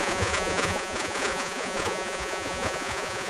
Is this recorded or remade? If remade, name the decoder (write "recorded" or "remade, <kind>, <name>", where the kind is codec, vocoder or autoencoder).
remade, vocoder, Vocos